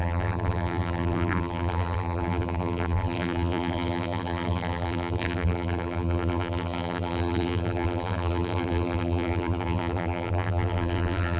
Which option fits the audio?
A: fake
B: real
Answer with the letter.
A